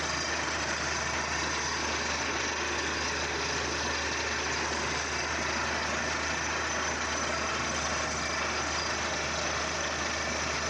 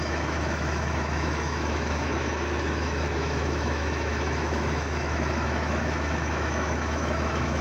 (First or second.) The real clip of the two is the first